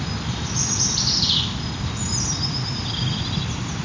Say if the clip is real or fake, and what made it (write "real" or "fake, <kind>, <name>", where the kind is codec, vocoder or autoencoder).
real